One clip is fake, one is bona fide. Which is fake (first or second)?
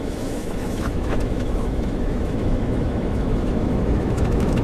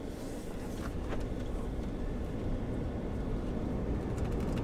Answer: first